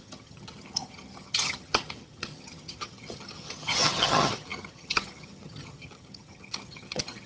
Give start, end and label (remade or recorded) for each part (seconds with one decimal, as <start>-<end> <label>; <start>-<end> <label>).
0.0-7.3 remade

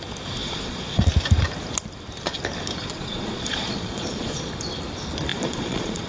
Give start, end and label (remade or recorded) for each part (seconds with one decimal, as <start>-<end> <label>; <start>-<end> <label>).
0.0-0.4 recorded; 0.4-1.0 remade; 1.0-2.8 recorded; 2.8-4.5 remade; 4.5-5.3 recorded; 5.3-6.1 remade

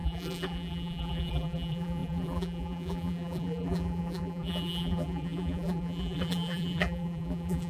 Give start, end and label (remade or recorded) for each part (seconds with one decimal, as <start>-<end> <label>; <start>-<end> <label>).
0.0-7.7 remade

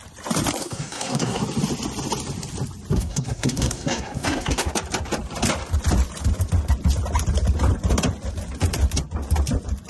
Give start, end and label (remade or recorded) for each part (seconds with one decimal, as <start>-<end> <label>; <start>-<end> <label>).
0.0-0.6 recorded; 0.6-1.4 remade; 1.4-2.9 recorded; 2.9-4.7 remade; 4.7-9.9 recorded

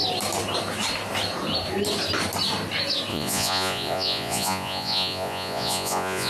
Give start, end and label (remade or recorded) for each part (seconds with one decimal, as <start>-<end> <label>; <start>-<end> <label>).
0.0-3.1 recorded; 3.1-6.3 remade

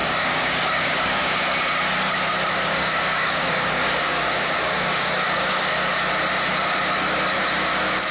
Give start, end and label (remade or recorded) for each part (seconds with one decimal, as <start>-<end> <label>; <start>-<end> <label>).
0.0-1.4 remade; 1.4-2.7 recorded; 2.7-5.7 remade; 5.7-8.1 recorded

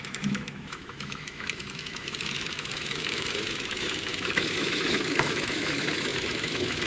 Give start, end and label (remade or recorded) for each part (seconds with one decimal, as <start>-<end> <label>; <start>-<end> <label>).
0.0-6.9 remade